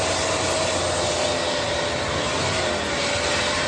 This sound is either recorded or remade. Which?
recorded